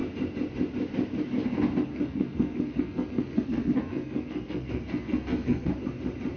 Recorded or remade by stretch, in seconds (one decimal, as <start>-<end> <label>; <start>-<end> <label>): 0.0-1.9 recorded; 1.9-5.7 remade; 5.7-6.4 recorded